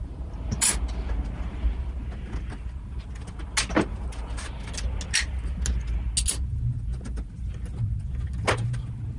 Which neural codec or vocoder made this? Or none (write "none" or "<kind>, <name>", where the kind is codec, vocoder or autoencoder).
none